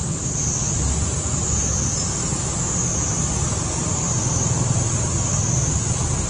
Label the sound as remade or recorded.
recorded